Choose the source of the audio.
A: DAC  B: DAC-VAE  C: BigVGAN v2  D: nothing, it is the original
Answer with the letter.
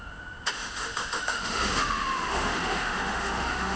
B